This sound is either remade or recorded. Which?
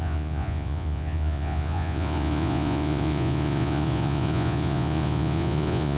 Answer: remade